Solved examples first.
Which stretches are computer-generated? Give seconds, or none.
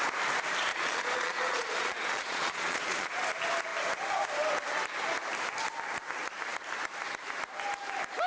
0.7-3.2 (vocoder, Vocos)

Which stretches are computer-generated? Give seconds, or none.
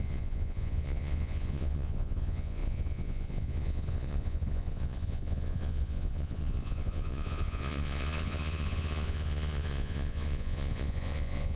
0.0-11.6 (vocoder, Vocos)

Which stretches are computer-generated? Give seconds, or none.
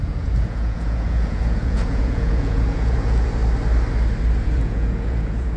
0.0-3.4 (vocoder, Vocos); 4.4-5.6